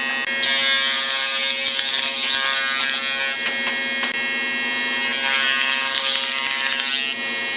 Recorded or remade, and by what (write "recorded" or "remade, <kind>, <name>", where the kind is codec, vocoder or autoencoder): recorded